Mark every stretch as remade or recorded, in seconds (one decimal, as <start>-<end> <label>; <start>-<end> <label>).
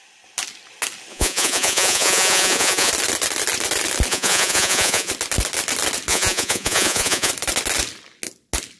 0.0-1.1 recorded; 1.1-2.9 remade; 2.9-4.1 recorded; 4.1-5.1 remade; 5.1-6.1 recorded; 6.1-7.3 remade; 7.3-8.8 recorded